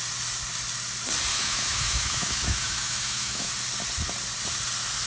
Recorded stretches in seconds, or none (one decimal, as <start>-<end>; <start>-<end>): 0.0-1.3; 3.5-5.1